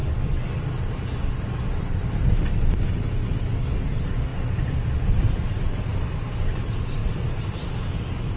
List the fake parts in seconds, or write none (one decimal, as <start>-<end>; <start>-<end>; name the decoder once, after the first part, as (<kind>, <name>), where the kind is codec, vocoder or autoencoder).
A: none